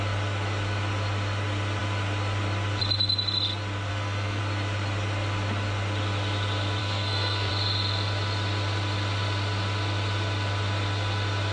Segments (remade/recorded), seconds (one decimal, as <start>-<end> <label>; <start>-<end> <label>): 0.0-3.9 recorded; 3.9-4.4 remade; 4.4-6.8 recorded; 6.8-7.5 remade; 7.5-11.5 recorded